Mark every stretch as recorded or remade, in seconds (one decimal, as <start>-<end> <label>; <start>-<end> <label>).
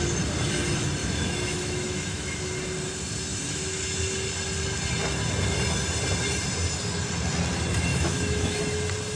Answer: 0.0-1.0 recorded; 1.0-2.5 remade; 2.5-3.3 recorded; 3.3-3.8 remade; 3.8-7.9 recorded; 7.9-8.6 remade; 8.6-9.2 recorded